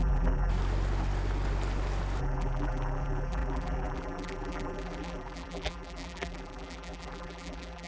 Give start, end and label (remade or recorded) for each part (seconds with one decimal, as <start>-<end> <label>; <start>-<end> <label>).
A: 0.0-0.5 remade; 0.5-2.2 recorded; 2.2-7.9 remade